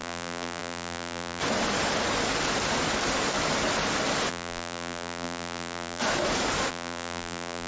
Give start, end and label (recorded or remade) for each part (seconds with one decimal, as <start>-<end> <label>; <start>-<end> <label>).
0.0-1.4 remade; 1.4-4.3 recorded; 4.3-6.0 remade; 6.0-6.7 recorded; 6.7-7.7 remade